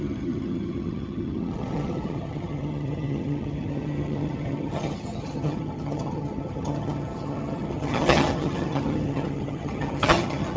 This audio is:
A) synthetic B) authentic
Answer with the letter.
A